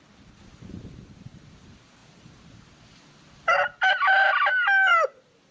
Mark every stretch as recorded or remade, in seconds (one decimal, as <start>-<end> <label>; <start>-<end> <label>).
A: 0.0-5.5 recorded